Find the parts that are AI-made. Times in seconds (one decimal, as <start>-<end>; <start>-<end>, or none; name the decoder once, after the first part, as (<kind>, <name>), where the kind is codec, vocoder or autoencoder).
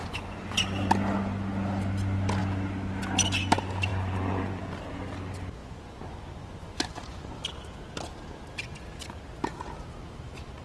0.0-0.9 (vocoder, Vocos); 3.9-4.6; 5.6-7.4